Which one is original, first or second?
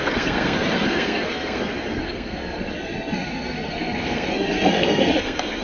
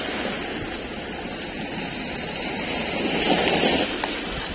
second